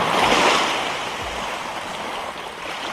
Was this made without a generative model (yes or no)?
yes